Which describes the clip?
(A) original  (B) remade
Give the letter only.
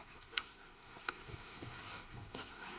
B